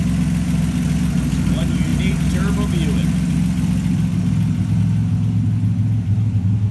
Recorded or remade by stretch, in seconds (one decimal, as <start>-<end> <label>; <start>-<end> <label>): 0.0-6.7 recorded

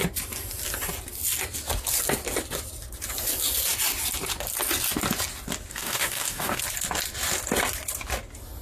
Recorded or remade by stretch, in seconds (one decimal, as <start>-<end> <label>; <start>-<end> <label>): 0.0-5.7 recorded; 5.7-6.6 remade; 6.6-8.6 recorded

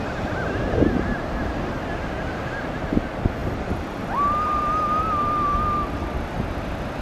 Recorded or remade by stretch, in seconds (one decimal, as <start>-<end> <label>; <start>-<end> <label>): 0.0-7.0 recorded

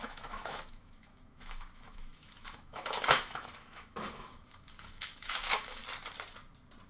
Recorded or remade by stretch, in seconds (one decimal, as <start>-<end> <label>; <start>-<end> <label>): 0.0-5.8 remade; 5.8-6.9 recorded

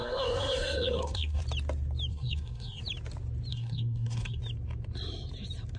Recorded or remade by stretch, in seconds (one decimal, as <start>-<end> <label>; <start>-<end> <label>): 0.0-1.4 remade; 1.4-2.1 recorded; 2.1-2.8 remade; 2.8-3.5 recorded; 3.5-4.4 remade; 4.4-5.8 recorded